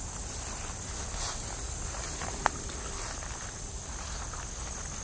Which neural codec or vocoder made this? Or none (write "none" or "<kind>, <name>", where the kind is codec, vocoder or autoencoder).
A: none